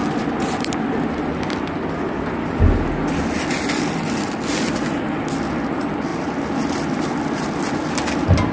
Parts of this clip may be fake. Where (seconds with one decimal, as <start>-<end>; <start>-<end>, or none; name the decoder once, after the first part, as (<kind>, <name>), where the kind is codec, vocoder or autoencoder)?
none